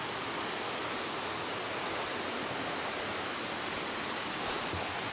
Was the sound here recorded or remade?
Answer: recorded